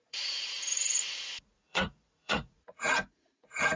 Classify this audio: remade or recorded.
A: remade